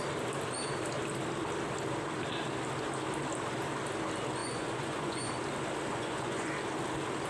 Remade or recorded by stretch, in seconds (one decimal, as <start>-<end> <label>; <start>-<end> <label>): 0.0-4.4 recorded; 4.4-5.3 remade; 5.3-5.9 recorded; 5.9-6.5 remade; 6.5-7.3 recorded